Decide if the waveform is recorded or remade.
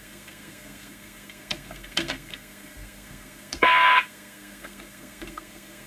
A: remade